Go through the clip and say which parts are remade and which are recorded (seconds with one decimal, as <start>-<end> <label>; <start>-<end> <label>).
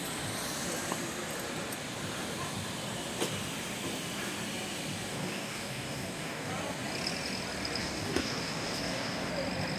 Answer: 0.0-5.1 recorded; 5.1-6.5 remade; 6.5-7.8 recorded; 7.8-9.3 remade; 9.3-9.8 recorded